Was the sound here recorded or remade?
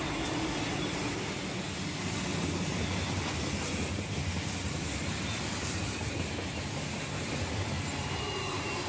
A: recorded